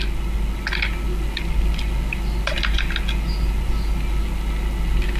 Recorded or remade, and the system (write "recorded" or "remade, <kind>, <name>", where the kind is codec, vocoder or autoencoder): recorded